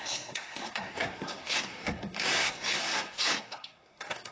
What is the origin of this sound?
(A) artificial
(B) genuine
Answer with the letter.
A